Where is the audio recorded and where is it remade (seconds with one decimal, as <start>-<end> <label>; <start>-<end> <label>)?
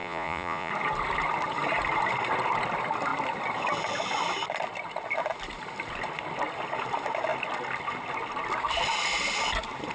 0.0-0.7 remade; 0.7-9.9 recorded